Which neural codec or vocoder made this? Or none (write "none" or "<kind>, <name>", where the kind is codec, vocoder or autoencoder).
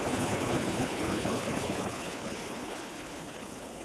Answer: codec, HILCodec